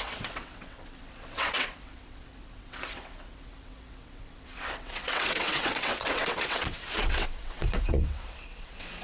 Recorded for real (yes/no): no